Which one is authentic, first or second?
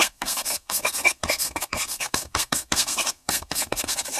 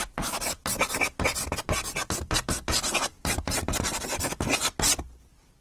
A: second